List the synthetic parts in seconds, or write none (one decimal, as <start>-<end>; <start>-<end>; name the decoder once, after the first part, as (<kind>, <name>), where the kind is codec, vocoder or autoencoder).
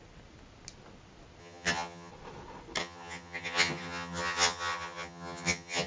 1.4-2.1 (vocoder, HiFi-GAN); 2.8-5.9